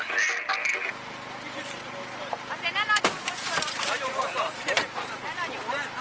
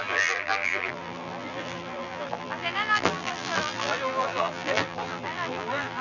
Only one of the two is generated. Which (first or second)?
second